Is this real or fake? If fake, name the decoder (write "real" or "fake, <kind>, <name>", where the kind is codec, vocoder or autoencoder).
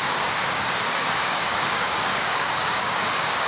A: fake, codec, DAC